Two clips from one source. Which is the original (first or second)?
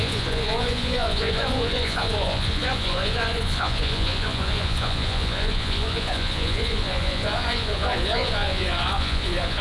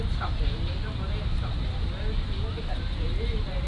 second